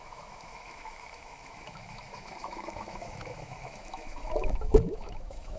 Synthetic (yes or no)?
yes